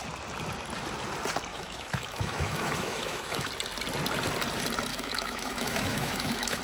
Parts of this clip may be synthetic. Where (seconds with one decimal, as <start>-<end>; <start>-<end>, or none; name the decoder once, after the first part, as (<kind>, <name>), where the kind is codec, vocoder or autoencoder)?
1.5-3.5 (autoencoder, DAC-VAE); 4.9-6.6